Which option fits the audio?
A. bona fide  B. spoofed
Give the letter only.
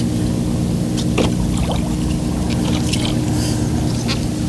A